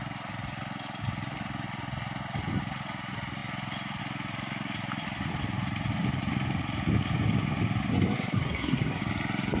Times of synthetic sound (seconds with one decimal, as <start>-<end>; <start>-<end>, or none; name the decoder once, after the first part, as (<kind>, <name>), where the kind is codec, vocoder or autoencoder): 7.9-9.0 (codec, SNAC)